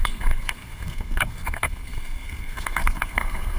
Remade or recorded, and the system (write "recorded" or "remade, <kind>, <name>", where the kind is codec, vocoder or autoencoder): remade, codec, SNAC